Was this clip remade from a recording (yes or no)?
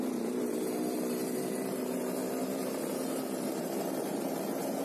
yes